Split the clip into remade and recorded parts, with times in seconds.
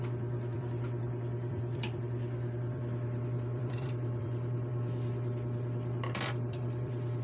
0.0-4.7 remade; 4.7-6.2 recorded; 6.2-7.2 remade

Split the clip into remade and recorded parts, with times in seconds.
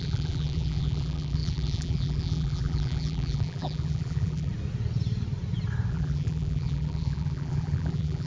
0.0-4.5 remade; 4.5-5.9 recorded; 5.9-8.3 remade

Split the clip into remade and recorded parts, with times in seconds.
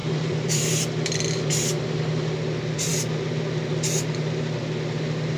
0.0-2.0 remade; 2.0-5.4 recorded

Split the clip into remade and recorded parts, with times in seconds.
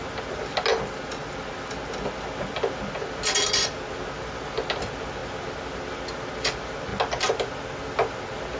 0.0-8.6 recorded